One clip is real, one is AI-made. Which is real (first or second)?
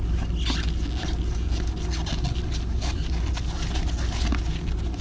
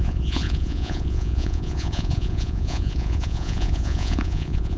first